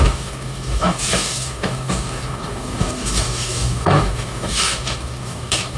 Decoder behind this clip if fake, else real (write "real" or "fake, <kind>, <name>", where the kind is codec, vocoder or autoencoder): fake, codec, DAC